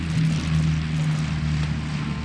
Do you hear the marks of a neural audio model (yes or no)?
no